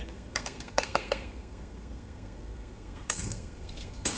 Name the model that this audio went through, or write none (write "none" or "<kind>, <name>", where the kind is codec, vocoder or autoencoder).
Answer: codec, SNAC